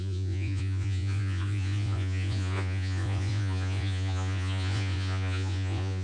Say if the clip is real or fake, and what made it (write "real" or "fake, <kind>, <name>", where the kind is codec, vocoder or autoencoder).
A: fake, vocoder, Vocos